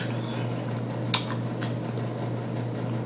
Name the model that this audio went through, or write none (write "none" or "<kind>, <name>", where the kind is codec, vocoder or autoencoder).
none